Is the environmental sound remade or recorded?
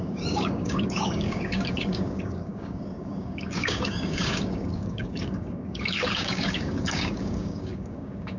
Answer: remade